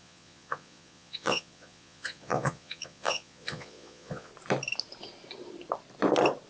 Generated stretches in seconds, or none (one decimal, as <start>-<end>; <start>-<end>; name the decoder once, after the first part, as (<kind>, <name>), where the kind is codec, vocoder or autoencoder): 0.0-4.3 (vocoder, Vocos)